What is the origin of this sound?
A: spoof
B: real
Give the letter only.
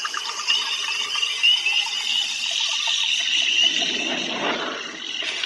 B